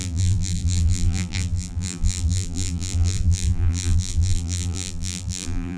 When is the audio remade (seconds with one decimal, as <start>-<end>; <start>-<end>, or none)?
0.0-5.8